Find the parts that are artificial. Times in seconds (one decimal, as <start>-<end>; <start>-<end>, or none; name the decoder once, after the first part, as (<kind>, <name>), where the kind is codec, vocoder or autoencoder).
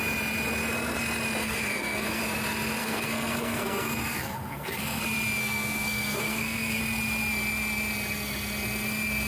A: 1.4-2.2 (codec, SNAC); 2.8-5.0; 5.4-6.8